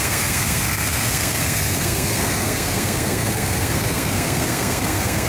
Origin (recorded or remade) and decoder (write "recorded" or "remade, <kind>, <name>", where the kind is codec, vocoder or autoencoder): remade, codec, SNAC